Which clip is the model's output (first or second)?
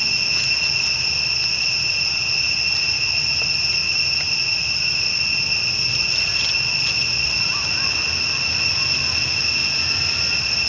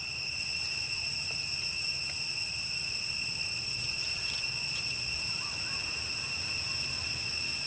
second